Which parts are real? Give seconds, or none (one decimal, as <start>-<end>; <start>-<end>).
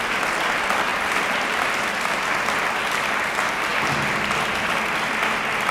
0.0-0.9; 2.4-5.7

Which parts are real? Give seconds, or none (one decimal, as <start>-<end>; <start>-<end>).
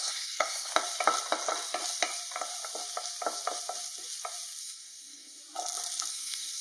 0.7-4.6; 5.4-6.1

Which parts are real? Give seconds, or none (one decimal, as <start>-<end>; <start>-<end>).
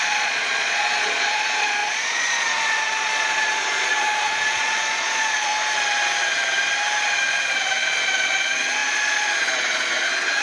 5.5-7.3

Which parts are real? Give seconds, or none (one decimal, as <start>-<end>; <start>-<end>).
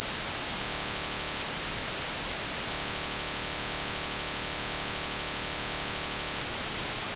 0.0-0.6; 1.4-2.7; 6.4-7.2